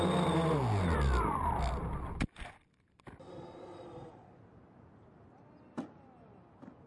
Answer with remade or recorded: recorded